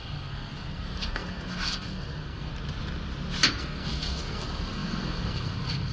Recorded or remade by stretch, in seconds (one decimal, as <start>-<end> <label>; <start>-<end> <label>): 0.0-2.5 remade; 2.5-3.5 recorded; 3.5-5.9 remade